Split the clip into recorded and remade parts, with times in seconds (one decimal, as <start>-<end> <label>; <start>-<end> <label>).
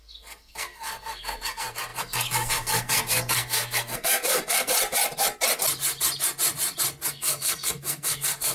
0.0-4.7 remade; 4.7-7.1 recorded; 7.1-8.5 remade